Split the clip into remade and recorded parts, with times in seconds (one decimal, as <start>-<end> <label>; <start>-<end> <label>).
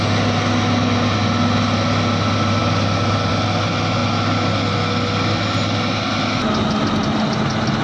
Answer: 0.0-7.8 recorded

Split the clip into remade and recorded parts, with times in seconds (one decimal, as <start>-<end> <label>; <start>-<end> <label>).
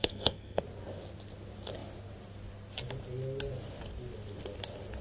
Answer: 0.0-0.6 remade; 0.6-5.0 recorded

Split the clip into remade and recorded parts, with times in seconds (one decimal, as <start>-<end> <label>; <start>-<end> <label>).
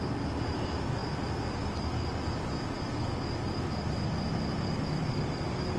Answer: 0.0-5.8 recorded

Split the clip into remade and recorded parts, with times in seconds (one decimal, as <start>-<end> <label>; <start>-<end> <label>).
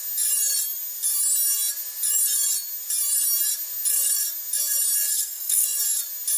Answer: 0.0-5.1 recorded; 5.1-5.8 remade; 5.8-6.4 recorded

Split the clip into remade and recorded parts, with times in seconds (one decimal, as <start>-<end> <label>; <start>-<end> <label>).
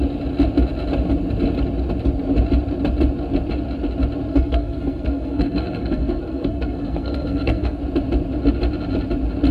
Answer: 0.0-4.3 recorded; 4.3-7.8 remade; 7.8-9.5 recorded